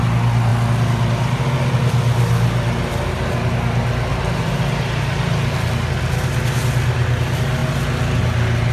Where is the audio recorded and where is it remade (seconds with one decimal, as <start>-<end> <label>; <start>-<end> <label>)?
0.0-4.1 recorded; 4.1-5.0 remade; 5.0-8.7 recorded